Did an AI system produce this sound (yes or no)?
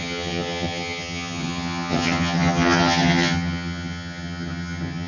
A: yes